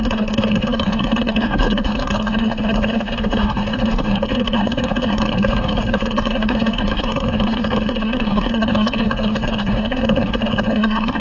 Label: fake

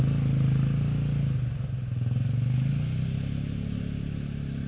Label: real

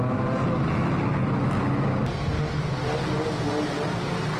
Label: real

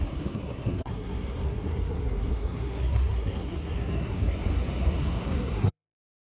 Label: fake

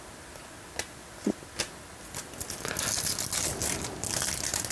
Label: real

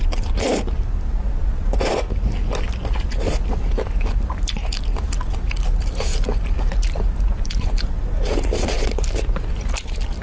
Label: real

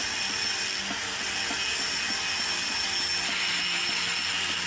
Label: real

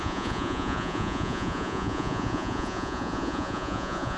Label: fake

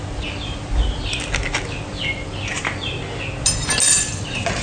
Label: real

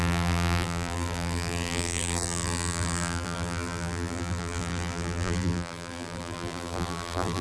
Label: fake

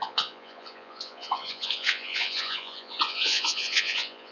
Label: fake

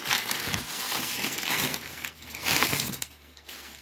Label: fake